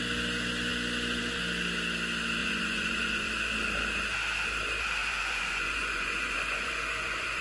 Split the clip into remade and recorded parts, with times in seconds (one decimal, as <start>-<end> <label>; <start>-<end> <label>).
0.0-2.4 recorded; 2.4-3.3 remade; 3.3-5.0 recorded; 5.0-7.4 remade